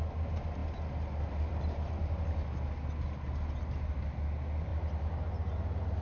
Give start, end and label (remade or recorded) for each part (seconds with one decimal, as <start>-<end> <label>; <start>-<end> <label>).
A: 0.0-6.0 recorded